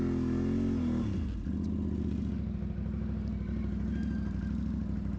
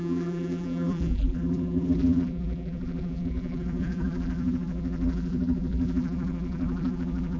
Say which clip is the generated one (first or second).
second